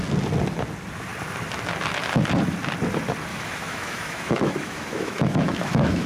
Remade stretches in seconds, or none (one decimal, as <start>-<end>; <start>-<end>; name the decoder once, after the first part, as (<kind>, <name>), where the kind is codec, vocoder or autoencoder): 3.3-6.1 (autoencoder, DAC-VAE)